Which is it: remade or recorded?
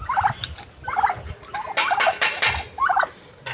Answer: recorded